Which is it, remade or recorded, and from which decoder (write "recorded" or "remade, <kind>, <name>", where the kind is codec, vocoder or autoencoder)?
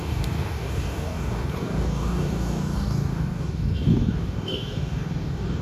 remade, codec, DAC